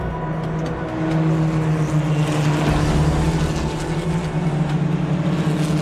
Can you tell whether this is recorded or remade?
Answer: recorded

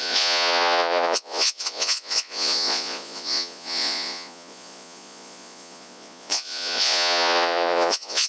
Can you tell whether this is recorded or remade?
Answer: remade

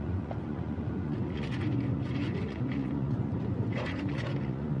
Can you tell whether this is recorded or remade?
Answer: remade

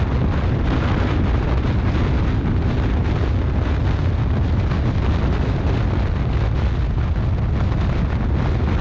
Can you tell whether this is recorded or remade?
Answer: recorded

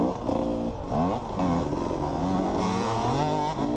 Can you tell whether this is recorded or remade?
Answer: recorded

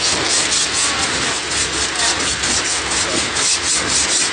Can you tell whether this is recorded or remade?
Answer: recorded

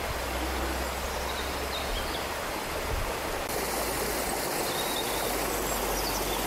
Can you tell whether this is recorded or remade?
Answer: recorded